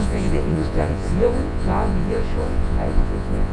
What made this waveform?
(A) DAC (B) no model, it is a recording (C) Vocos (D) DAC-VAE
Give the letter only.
C